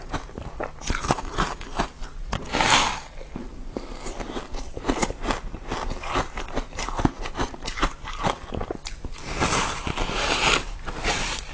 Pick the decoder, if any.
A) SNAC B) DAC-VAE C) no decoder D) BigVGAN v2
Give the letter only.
C